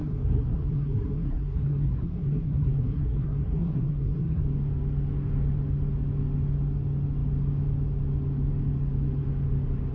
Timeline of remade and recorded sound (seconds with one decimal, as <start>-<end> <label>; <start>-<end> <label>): 0.0-4.4 remade; 4.4-9.9 recorded